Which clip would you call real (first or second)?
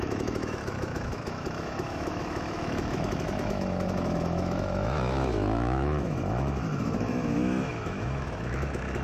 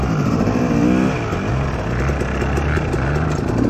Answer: second